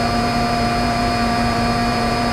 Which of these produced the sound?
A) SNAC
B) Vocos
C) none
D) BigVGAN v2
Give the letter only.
D